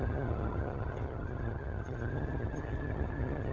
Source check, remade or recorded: remade